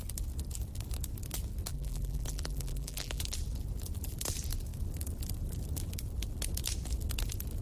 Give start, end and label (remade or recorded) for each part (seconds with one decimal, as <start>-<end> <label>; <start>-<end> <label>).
0.0-1.7 recorded; 1.7-3.2 remade; 3.2-7.6 recorded